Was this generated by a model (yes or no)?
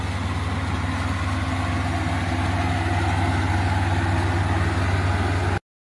no